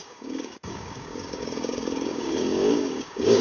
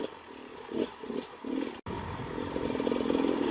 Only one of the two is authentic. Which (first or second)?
second